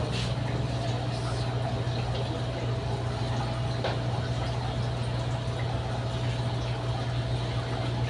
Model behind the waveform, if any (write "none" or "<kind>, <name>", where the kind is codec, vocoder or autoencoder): none